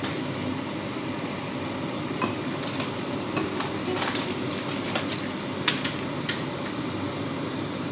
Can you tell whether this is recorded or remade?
recorded